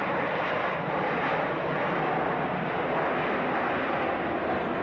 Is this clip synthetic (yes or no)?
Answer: no